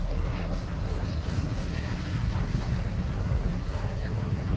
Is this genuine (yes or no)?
no